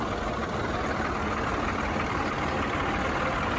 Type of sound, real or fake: real